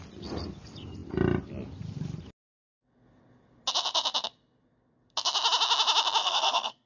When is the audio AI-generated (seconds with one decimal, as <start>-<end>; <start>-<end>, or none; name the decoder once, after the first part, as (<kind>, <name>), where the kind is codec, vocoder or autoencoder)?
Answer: 6.2-6.9 (codec, SNAC)